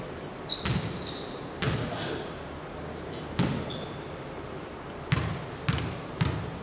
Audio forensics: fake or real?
real